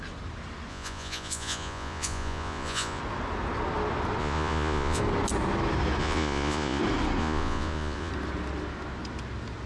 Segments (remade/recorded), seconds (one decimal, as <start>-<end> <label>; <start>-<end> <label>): 0.0-0.7 recorded; 0.7-3.0 remade; 3.0-4.2 recorded; 4.2-5.0 remade; 5.0-6.0 recorded; 6.0-6.8 remade; 6.8-7.2 recorded; 7.2-8.1 remade; 8.1-9.7 recorded